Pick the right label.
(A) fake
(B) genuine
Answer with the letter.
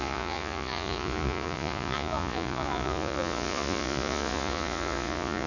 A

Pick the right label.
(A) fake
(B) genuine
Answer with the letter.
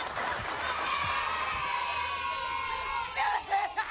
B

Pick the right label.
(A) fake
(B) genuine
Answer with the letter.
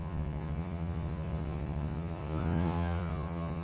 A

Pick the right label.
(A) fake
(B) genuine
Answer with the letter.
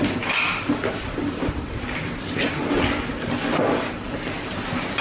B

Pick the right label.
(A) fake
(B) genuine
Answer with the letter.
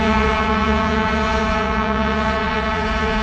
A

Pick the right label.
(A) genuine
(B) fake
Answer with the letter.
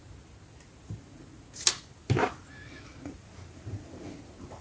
A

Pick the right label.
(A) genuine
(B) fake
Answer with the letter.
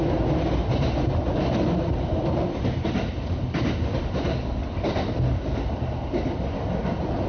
A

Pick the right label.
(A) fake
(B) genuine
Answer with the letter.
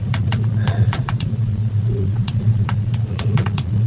A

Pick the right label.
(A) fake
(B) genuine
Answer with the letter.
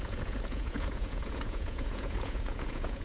A